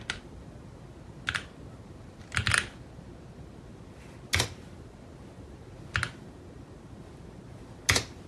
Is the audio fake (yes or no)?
no